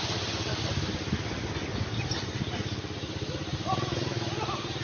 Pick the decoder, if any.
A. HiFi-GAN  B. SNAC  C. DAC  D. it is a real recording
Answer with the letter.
D